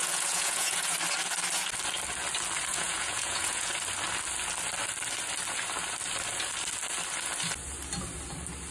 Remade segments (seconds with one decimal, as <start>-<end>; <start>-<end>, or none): 0.0-0.9; 2.7-3.7